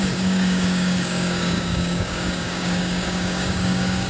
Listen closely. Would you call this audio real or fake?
fake